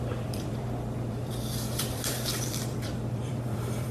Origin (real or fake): fake